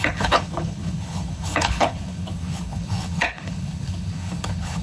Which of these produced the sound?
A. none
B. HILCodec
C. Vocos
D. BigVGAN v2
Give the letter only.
B